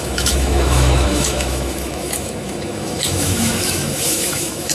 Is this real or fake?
fake